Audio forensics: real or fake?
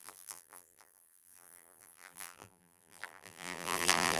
fake